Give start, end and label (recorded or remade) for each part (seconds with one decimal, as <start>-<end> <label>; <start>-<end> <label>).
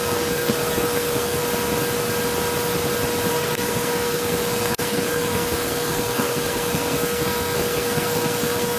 0.0-1.4 remade; 1.4-3.3 recorded; 3.3-8.8 remade